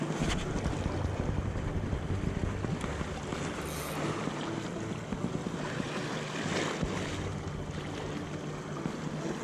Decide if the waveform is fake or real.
real